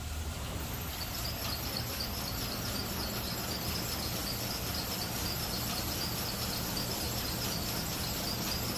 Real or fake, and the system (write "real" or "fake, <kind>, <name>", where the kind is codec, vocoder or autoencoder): real